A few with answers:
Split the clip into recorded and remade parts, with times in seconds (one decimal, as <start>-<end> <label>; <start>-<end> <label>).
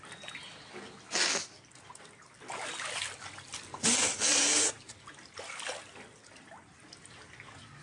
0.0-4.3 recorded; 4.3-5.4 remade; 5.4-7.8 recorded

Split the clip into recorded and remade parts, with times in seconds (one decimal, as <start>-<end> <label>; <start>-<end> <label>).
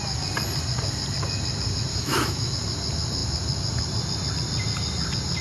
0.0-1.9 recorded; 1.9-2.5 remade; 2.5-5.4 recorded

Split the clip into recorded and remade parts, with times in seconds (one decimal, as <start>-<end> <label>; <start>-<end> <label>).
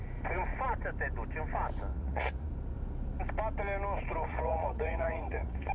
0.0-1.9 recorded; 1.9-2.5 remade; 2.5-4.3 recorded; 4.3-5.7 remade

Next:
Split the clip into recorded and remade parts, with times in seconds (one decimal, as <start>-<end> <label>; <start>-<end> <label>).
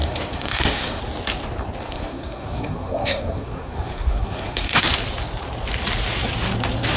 0.0-1.0 remade; 1.0-1.8 recorded; 1.8-4.8 remade; 4.8-7.0 recorded